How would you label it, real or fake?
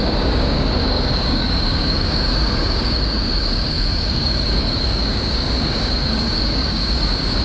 fake